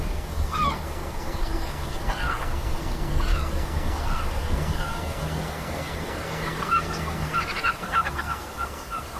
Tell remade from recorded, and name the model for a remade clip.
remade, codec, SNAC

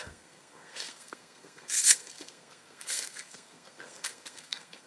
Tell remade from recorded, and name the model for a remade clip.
remade, codec, SNAC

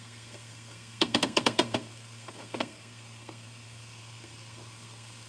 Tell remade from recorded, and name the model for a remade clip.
remade, codec, SNAC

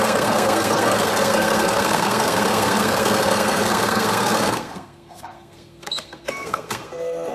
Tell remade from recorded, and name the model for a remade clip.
remade, codec, SNAC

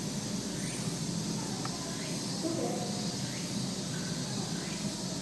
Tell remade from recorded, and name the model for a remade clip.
recorded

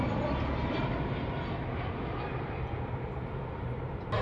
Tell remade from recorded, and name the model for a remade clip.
recorded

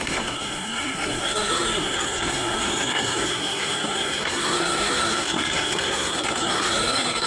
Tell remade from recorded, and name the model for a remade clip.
remade, codec, SNAC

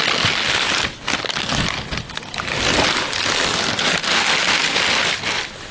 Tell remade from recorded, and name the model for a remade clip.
recorded